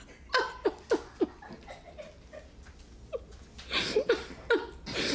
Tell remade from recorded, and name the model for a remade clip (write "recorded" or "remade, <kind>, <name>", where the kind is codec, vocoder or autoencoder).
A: recorded